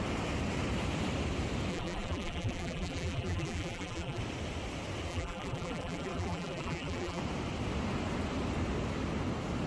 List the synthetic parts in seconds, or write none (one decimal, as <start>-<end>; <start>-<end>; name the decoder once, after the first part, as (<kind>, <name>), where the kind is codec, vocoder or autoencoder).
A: 1.7-4.2 (vocoder, BigVGAN v2); 5.1-7.2